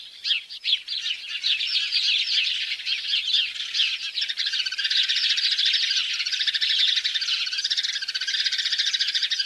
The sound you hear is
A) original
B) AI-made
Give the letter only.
B